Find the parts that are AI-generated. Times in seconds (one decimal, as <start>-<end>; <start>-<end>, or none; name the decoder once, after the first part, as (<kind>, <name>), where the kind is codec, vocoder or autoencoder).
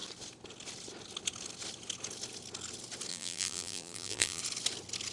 3.1-4.4 (vocoder, BigVGAN v2)